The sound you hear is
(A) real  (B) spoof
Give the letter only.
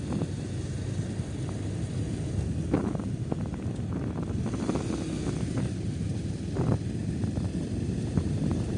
A